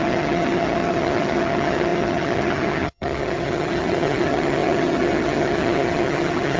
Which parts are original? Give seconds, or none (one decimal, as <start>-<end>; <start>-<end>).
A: none